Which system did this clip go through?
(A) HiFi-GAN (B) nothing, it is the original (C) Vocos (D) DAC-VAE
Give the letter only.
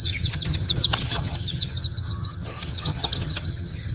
A